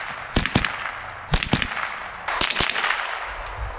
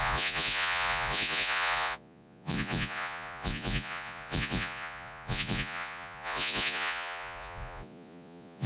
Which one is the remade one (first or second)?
second